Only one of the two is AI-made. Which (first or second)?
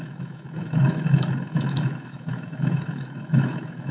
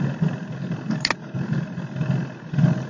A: first